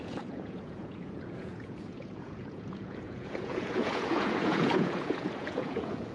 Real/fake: fake